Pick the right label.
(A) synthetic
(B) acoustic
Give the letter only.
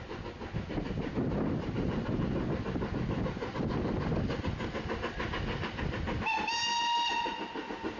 B